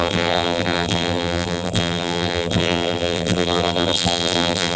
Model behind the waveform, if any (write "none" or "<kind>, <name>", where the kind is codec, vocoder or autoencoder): vocoder, BigVGAN v2